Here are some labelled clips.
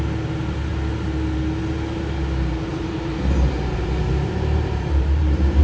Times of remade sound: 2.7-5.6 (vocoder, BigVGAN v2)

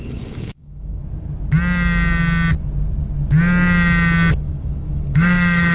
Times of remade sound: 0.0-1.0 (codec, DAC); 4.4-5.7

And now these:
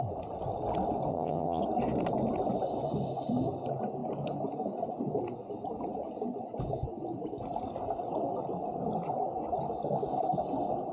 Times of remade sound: 1.1-1.6 (vocoder, HiFi-GAN)